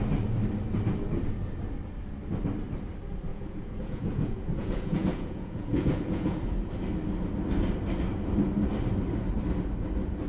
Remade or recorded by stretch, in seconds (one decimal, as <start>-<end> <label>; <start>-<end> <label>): 0.0-3.3 recorded; 3.3-6.4 remade; 6.4-10.3 recorded